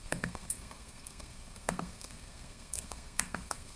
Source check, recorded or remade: remade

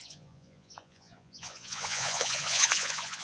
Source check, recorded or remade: remade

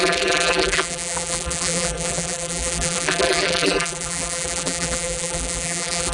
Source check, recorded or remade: remade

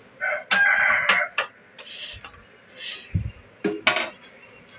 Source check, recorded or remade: recorded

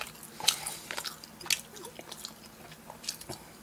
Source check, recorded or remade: recorded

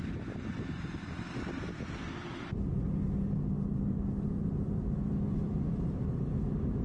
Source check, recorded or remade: recorded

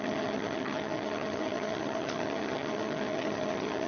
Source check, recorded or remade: remade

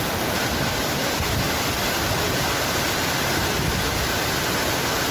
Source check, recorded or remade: recorded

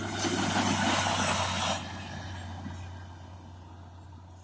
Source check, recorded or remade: recorded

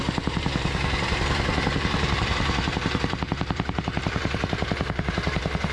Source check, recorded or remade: remade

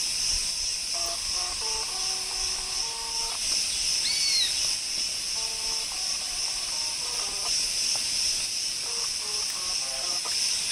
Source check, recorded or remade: recorded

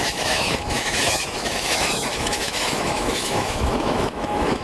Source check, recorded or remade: remade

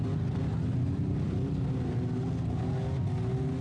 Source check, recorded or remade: recorded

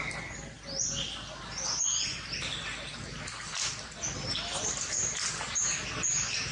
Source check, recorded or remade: recorded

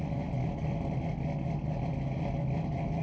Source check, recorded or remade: recorded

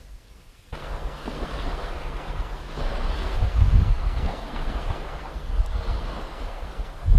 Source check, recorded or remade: remade